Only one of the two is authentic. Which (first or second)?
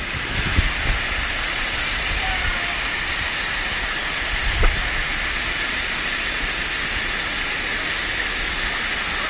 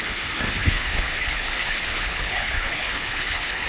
first